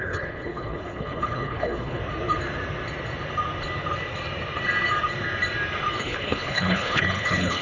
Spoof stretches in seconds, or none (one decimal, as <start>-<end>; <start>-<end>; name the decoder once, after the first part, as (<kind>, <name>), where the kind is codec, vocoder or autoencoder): 0.0-2.0 (codec, HILCodec); 6.0-7.6